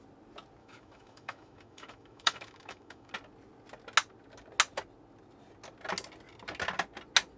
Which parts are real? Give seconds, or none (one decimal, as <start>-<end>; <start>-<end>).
0.0-0.6; 3.1-7.4